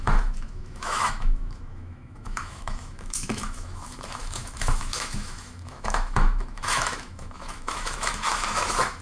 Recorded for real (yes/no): no